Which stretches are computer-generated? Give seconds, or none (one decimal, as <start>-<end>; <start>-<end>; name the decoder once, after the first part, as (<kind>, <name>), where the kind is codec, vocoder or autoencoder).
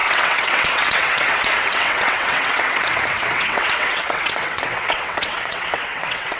0.0-6.4 (vocoder, WaveNeXt)